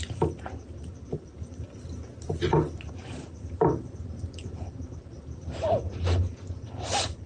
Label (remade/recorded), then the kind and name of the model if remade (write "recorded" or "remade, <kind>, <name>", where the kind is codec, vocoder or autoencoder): remade, vocoder, BigVGAN v2